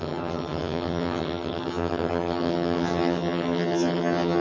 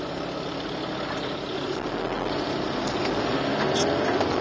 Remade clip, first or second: first